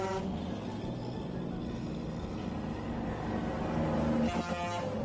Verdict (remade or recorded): recorded